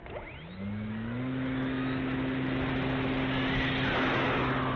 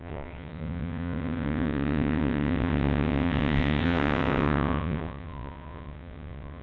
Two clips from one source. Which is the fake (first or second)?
second